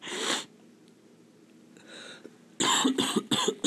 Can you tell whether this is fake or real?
real